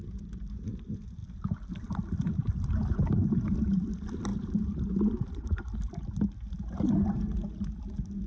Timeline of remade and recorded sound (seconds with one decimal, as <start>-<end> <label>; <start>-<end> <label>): 0.0-8.3 recorded

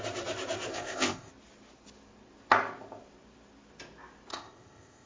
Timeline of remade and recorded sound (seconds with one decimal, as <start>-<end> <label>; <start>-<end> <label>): 0.0-0.7 recorded; 0.7-1.3 remade; 1.3-4.3 recorded; 4.3-5.1 remade